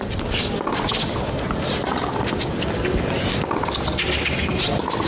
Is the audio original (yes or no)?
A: yes